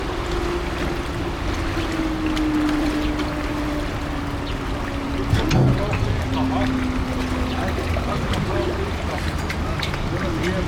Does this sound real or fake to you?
real